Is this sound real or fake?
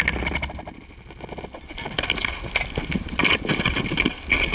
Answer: real